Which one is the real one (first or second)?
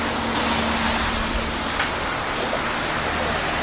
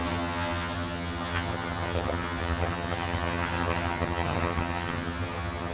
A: first